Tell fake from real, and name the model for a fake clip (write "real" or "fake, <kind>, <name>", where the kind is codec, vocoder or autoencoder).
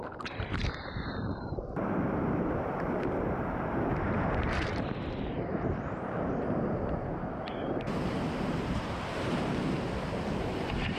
fake, vocoder, BigVGAN v2